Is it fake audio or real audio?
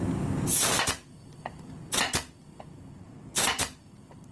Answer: real